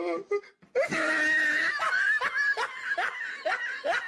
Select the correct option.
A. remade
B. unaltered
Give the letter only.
B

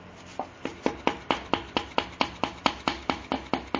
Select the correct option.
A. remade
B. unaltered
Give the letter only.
B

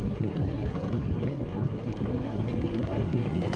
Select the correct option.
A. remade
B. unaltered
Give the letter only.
A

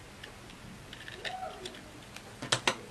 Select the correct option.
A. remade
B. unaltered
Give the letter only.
B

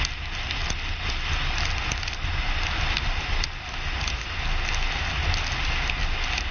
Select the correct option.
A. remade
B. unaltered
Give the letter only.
B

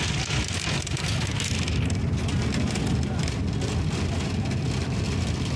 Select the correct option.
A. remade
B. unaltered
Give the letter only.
B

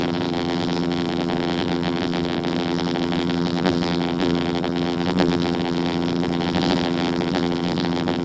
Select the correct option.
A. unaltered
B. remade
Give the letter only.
B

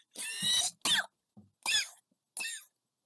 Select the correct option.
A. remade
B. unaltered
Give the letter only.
B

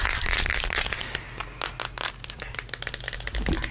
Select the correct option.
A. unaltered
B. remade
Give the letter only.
A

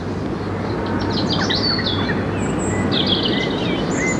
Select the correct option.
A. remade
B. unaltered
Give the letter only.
B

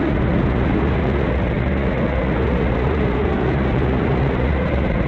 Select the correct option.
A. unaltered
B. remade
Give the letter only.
B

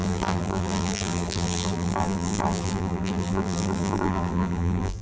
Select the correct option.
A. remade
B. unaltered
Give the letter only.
A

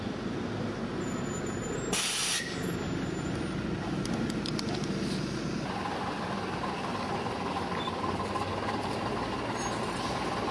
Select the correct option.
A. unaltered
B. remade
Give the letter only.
A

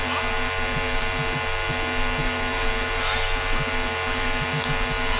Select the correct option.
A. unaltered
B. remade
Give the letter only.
A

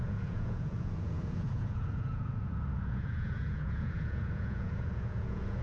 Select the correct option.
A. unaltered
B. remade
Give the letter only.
B